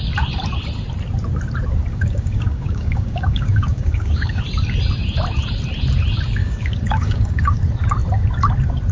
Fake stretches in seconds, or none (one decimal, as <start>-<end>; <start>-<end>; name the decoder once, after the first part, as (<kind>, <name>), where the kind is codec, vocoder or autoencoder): 1.9-4.4 (codec, DAC); 6.4-7.6